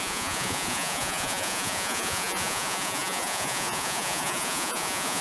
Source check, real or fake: fake